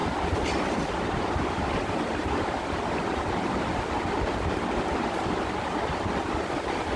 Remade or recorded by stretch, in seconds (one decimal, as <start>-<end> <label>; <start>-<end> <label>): 0.0-7.0 recorded